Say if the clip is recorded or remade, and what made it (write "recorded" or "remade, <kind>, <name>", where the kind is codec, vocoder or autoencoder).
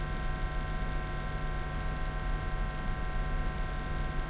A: recorded